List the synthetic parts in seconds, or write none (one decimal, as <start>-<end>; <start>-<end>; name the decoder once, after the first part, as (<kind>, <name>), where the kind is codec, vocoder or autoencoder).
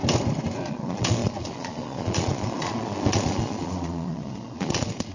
0.7-5.1 (vocoder, Vocos)